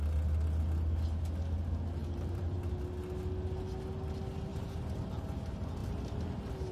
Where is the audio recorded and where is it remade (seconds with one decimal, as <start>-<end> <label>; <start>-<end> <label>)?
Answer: 0.0-2.0 recorded; 2.0-2.7 remade; 2.7-4.5 recorded; 4.5-5.0 remade; 5.0-6.7 recorded